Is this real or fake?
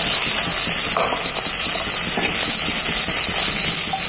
real